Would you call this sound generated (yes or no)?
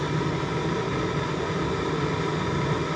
no